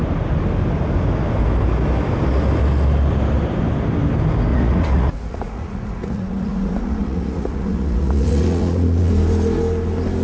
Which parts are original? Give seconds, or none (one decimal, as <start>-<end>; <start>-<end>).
0.0-4.5; 9.1-10.2

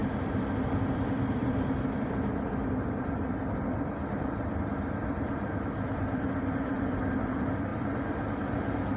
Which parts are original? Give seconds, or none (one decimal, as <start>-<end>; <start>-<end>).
7.7-9.0

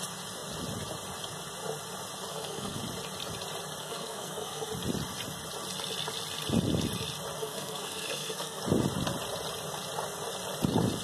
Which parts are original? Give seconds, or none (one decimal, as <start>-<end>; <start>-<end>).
0.0-2.3; 2.8-3.8; 4.7-7.4; 8.6-11.0

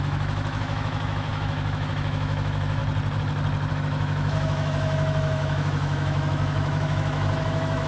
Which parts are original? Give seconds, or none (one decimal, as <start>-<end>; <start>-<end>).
2.8-3.7